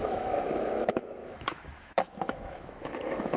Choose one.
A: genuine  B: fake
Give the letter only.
B